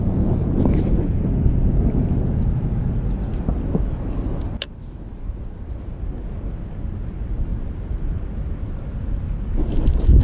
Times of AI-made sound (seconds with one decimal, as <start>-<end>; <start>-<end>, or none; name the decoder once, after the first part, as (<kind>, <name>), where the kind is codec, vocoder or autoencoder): none